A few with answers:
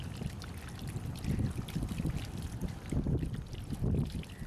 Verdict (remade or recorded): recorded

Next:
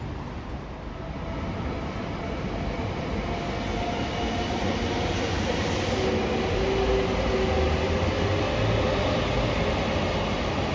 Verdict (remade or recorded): recorded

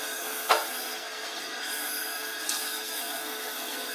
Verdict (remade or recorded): remade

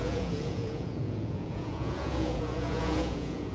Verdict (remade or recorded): remade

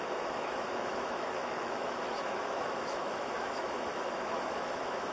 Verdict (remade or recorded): remade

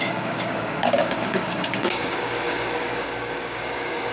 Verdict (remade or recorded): remade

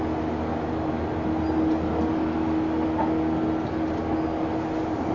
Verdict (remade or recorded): recorded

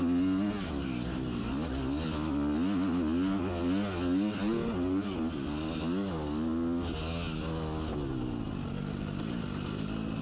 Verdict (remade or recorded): recorded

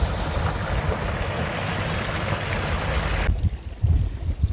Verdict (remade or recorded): recorded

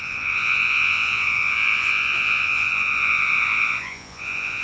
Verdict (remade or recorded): remade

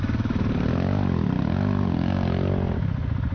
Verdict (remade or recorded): recorded